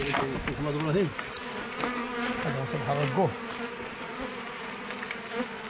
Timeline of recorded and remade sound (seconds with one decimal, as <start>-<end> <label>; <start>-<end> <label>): 0.0-3.5 recorded; 3.5-5.1 remade; 5.1-5.7 recorded